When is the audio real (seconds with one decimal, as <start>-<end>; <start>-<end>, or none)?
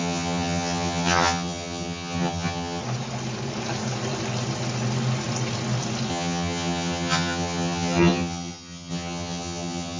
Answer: 2.8-6.1